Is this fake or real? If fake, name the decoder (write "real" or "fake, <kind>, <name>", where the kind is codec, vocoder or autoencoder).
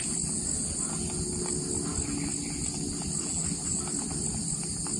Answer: real